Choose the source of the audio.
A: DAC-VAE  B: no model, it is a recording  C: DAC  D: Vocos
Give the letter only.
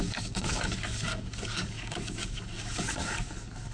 C